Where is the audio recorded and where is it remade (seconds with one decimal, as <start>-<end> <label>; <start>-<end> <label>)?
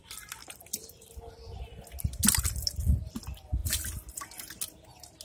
0.0-5.2 recorded